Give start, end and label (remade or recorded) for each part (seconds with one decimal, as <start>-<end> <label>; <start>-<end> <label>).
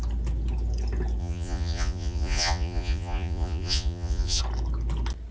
0.0-1.2 recorded; 1.2-4.4 remade; 4.4-5.3 recorded